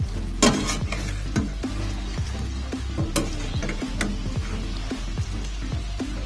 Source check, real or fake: real